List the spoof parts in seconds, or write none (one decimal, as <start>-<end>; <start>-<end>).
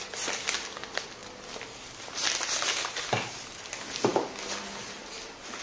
none